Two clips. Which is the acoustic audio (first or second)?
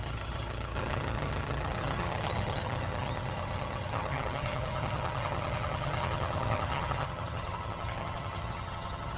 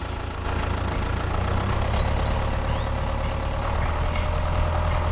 second